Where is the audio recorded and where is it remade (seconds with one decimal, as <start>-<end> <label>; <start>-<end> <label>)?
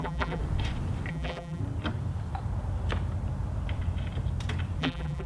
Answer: 0.0-0.4 remade; 0.4-1.1 recorded; 1.1-1.6 remade; 1.6-4.8 recorded; 4.8-5.3 remade